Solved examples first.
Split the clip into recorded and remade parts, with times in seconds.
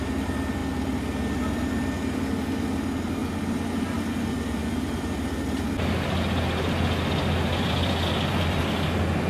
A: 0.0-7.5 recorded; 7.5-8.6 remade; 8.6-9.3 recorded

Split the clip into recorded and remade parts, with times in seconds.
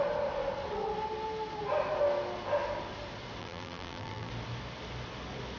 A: 0.0-3.4 recorded; 3.4-4.3 remade; 4.3-5.6 recorded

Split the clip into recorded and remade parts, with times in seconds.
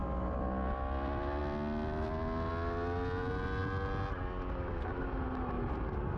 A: 0.0-6.2 recorded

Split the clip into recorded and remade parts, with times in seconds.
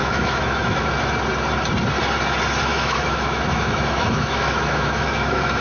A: 0.0-0.9 remade; 0.9-2.7 recorded; 2.7-5.6 remade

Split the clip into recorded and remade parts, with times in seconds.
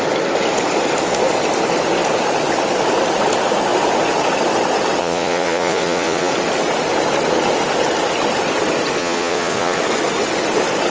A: 0.0-5.0 recorded; 5.0-6.3 remade; 6.3-9.0 recorded; 9.0-9.8 remade; 9.8-10.9 recorded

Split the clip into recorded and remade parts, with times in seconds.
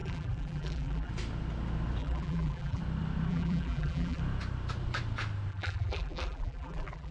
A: 0.0-1.1 remade; 1.1-2.0 recorded; 2.0-2.8 remade; 2.8-3.3 recorded; 3.3-4.2 remade; 4.2-5.5 recorded; 5.5-7.1 remade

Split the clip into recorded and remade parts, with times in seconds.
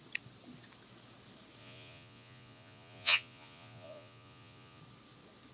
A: 0.0-1.6 recorded; 1.6-4.8 remade; 4.8-5.5 recorded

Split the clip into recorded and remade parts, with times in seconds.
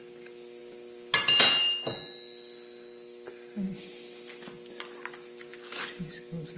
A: 0.0-6.6 recorded